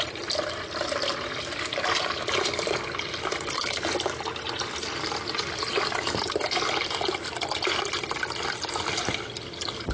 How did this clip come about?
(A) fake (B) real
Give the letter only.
B